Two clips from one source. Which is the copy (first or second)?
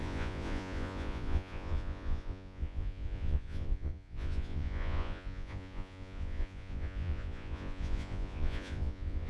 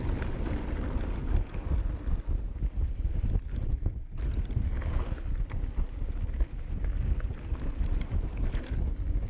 first